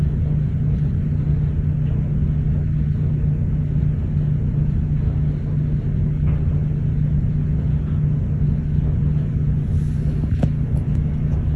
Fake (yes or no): no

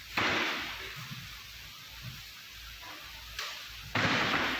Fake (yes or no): no